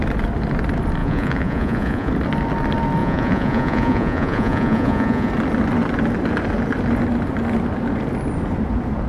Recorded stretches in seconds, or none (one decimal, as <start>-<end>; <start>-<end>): 0.0-1.0; 2.1-3.0; 5.3-9.1